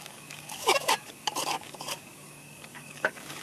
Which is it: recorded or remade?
remade